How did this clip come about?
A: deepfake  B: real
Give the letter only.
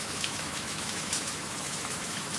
A